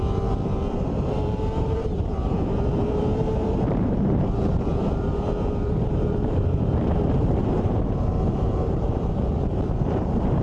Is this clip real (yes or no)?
no